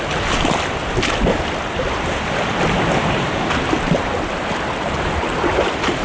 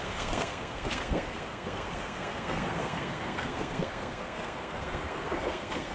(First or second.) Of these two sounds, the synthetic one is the second